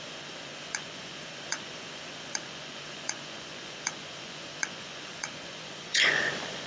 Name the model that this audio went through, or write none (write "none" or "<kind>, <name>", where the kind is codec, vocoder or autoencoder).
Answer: vocoder, Vocos